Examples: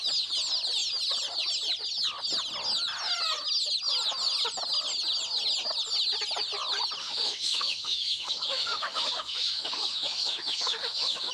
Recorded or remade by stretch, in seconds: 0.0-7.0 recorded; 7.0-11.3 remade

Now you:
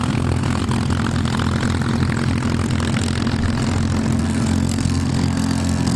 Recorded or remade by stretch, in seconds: 0.0-0.6 remade; 0.6-4.2 recorded; 4.2-6.0 remade

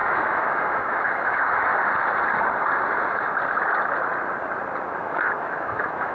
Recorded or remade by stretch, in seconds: 0.0-1.7 remade; 1.7-5.0 recorded; 5.0-6.1 remade

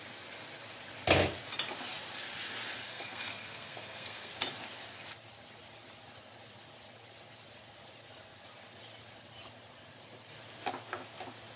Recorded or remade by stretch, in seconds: 0.0-2.8 recorded; 2.8-4.3 remade; 4.3-11.6 recorded

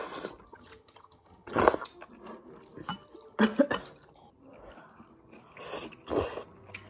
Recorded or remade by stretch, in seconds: 0.0-0.5 recorded; 0.5-1.6 remade; 1.6-6.9 recorded

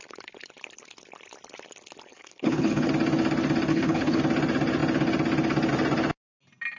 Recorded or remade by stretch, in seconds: 0.0-2.1 recorded; 2.1-2.9 remade; 2.9-3.7 recorded; 3.7-4.2 remade; 4.2-6.8 recorded